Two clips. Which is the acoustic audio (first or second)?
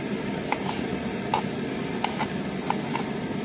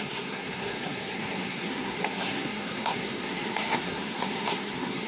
first